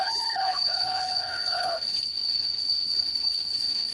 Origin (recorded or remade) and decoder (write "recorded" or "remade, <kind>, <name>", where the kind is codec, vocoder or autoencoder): remade, codec, HILCodec